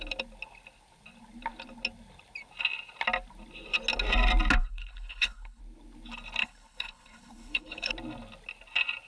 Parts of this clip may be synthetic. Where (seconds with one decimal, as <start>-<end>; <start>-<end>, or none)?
4.6-5.6; 6.4-7.9